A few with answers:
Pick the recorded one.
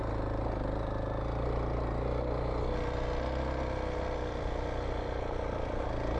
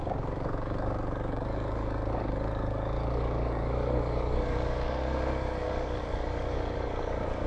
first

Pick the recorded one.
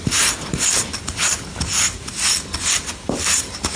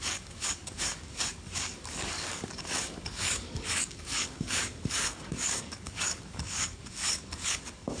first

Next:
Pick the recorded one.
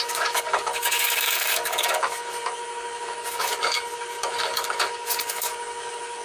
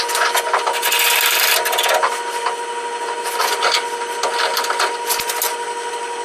second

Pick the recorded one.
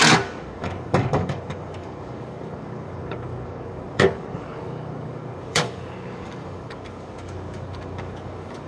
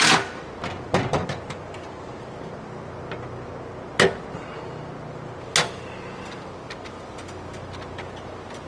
second